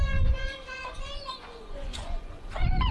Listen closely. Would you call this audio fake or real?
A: fake